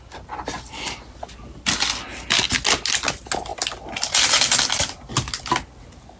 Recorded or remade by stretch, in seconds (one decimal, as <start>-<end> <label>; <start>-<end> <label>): 0.0-6.2 recorded

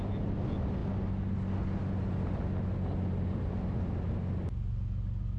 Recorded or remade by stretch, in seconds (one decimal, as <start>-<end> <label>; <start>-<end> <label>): 0.0-5.4 recorded

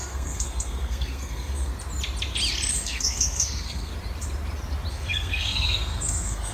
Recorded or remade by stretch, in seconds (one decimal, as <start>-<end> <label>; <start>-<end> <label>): 0.0-1.7 remade; 1.7-2.7 recorded; 2.7-3.9 remade; 3.9-4.9 recorded; 4.9-6.5 remade

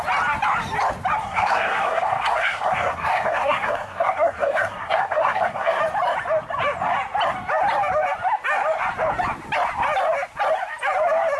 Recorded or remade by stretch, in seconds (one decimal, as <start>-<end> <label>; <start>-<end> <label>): 0.0-1.2 recorded; 1.2-5.8 remade; 5.8-11.4 recorded

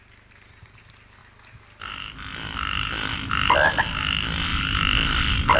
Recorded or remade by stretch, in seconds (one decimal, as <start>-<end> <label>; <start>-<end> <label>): 0.0-4.5 recorded; 4.5-5.6 remade